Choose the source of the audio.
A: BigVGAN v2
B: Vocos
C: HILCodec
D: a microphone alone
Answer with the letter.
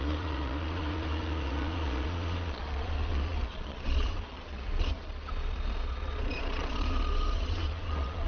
B